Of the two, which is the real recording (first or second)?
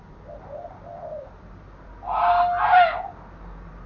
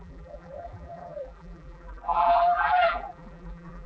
first